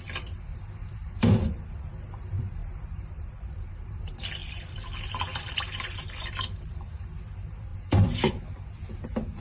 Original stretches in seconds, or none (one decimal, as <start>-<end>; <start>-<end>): none